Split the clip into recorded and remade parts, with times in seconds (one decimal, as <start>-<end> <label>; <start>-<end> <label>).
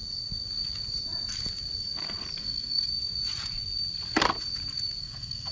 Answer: 0.0-2.4 recorded; 2.4-2.9 remade; 2.9-5.0 recorded; 5.0-5.5 remade